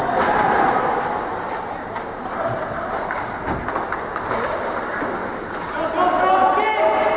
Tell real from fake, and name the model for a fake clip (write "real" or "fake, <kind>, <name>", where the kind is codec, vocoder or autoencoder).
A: real